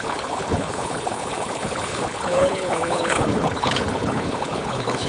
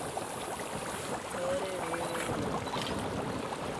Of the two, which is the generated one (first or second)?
first